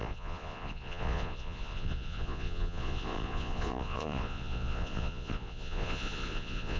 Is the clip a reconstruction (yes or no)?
yes